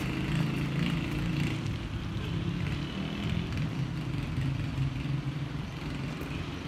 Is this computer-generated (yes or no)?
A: no